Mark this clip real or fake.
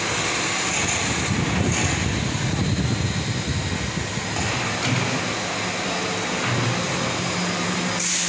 real